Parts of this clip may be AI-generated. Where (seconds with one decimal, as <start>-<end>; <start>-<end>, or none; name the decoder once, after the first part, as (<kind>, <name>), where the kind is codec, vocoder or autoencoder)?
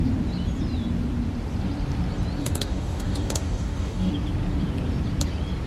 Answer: 2.4-4.1 (codec, DAC)